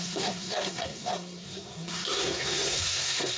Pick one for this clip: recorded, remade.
remade